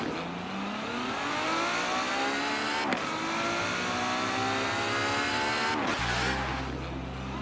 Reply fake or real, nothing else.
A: real